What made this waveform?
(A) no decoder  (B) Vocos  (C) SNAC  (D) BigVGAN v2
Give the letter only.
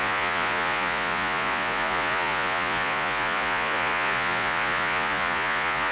B